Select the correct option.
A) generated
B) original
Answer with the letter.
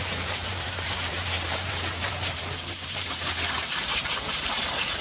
A